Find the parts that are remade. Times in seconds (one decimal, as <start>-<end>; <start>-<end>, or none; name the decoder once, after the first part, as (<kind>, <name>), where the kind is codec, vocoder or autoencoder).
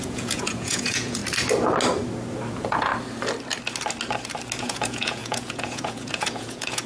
0.0-1.2 (vocoder, Vocos); 2.5-2.9; 4.6-6.9